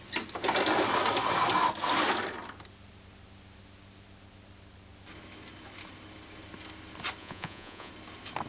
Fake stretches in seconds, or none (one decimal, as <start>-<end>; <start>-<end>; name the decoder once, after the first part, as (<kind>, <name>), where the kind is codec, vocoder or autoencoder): 7.2-7.9 (vocoder, Vocos)